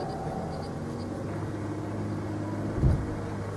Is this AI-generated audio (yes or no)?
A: no